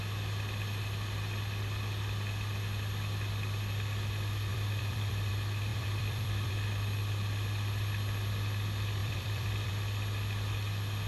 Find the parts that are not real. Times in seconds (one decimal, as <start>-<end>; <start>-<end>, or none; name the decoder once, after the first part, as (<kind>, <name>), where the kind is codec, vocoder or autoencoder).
4.5-5.3 (vocoder, BigVGAN v2); 5.7-6.5; 9.0-9.7